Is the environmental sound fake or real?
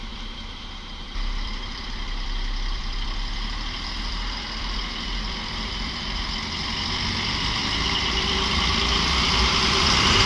fake